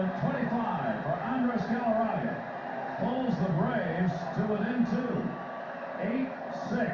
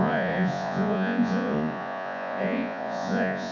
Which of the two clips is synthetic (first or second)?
second